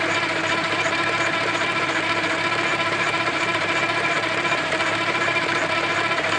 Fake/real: fake